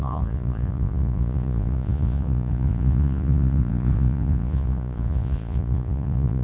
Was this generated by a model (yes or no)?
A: yes